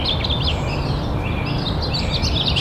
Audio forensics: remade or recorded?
recorded